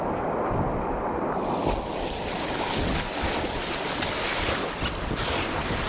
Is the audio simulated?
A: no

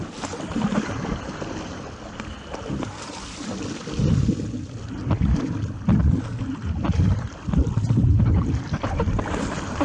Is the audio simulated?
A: no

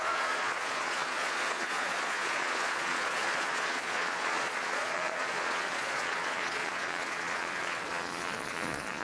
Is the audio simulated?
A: yes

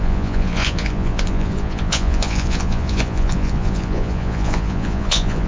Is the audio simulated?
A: yes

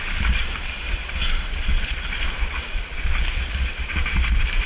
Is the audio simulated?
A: yes